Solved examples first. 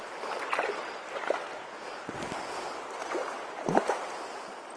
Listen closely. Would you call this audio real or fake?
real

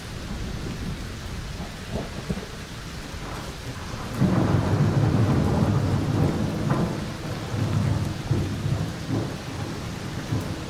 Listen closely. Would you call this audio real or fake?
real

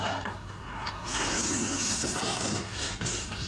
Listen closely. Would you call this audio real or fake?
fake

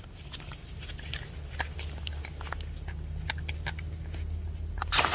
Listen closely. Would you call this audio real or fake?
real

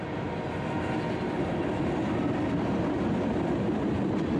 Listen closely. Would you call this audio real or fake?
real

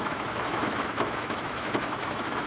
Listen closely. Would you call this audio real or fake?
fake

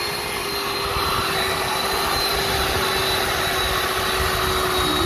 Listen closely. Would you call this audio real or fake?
real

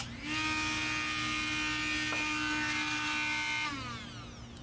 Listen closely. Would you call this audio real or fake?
real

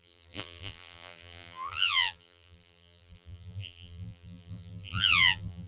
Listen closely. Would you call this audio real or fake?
fake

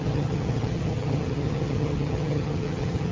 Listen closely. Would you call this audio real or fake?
fake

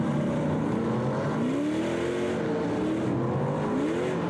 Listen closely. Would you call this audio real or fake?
real